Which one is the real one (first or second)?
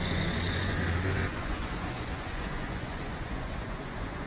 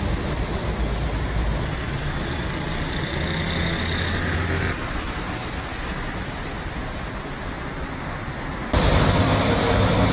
second